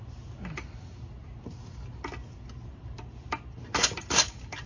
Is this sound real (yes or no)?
yes